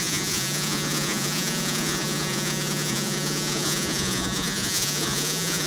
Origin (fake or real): fake